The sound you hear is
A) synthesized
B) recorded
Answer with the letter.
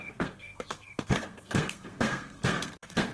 A